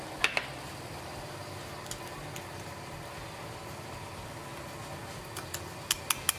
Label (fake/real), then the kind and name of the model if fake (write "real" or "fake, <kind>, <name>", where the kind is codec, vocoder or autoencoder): real